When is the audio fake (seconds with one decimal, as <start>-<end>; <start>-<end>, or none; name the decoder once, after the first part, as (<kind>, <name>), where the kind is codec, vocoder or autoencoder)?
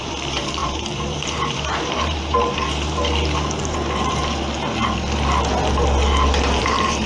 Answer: 0.0-3.0 (vocoder, BigVGAN v2); 3.6-4.2; 6.6-7.1